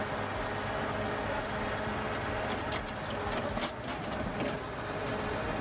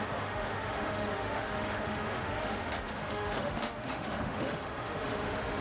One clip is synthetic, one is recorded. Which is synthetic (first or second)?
second